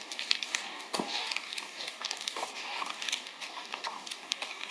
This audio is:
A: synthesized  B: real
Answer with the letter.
A